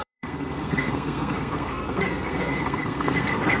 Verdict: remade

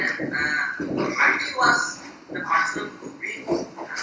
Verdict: recorded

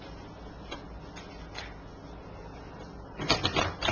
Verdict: recorded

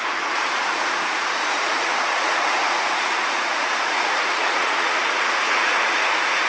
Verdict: remade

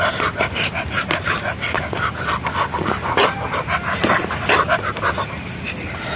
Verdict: recorded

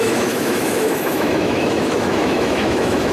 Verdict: remade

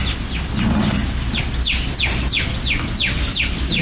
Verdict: recorded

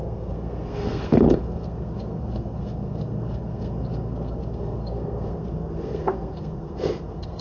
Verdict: remade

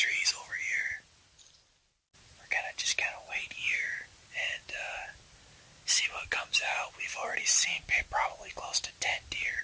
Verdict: recorded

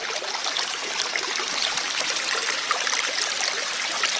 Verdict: recorded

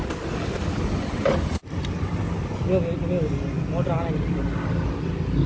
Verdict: recorded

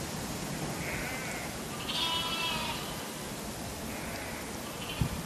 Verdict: recorded